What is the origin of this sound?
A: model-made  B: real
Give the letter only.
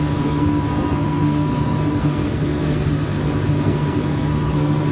A